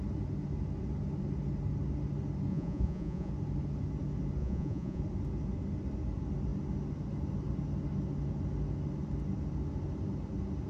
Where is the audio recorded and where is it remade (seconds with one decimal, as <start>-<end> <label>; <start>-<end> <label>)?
0.0-2.5 recorded; 2.5-3.3 remade; 3.3-4.4 recorded; 4.4-5.0 remade; 5.0-10.7 recorded